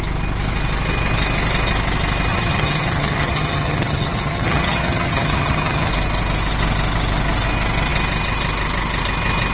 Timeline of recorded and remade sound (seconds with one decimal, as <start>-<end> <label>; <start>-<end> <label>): 0.0-2.3 recorded; 2.3-5.9 remade; 5.9-9.5 recorded

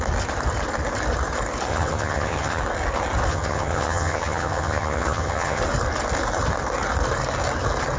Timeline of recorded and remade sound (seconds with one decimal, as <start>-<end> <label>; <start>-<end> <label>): 0.0-1.7 recorded; 1.7-2.6 remade; 2.6-3.3 recorded; 3.3-5.6 remade; 5.6-8.0 recorded

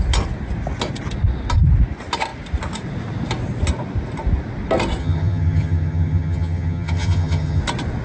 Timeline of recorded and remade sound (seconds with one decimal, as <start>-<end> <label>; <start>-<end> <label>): 0.0-5.0 recorded; 5.0-7.6 remade; 7.6-8.0 recorded

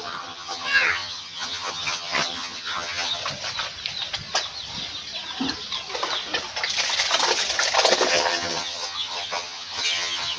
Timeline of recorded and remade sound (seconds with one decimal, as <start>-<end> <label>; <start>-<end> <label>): 0.0-3.2 remade; 3.2-8.1 recorded; 8.1-10.4 remade

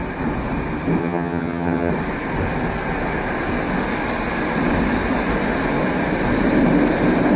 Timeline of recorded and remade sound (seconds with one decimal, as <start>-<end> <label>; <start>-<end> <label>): 0.0-1.0 recorded; 1.0-1.9 remade; 1.9-7.4 recorded

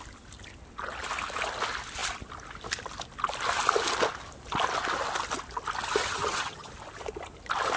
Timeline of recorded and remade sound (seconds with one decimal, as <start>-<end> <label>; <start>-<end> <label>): 0.0-6.0 recorded; 6.0-6.7 remade; 6.7-7.8 recorded

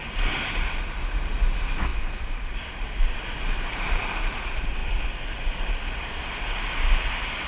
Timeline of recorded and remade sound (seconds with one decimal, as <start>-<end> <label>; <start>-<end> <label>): 0.0-7.5 recorded